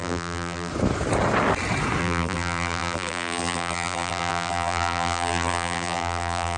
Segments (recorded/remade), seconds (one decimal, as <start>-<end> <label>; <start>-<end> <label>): 0.0-0.7 remade; 0.7-2.0 recorded; 2.0-6.6 remade